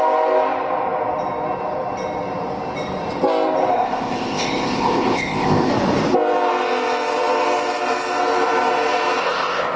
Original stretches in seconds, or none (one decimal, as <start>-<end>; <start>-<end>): 0.0-3.7; 5.7-9.2